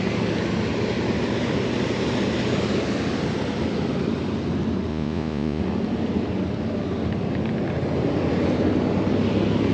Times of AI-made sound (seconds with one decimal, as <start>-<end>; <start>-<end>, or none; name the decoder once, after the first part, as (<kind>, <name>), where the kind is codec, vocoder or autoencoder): 4.9-5.6 (vocoder, Vocos)